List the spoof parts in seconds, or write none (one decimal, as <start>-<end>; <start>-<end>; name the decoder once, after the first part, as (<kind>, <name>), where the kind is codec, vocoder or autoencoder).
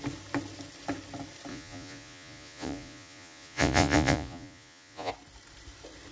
1.5-5.1 (vocoder, Vocos)